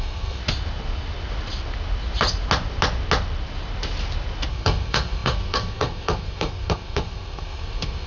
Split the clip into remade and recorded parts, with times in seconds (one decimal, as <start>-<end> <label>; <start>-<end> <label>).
0.0-0.4 remade; 0.4-4.5 recorded; 4.5-8.1 remade